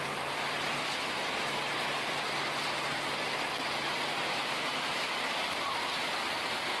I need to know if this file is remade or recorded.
recorded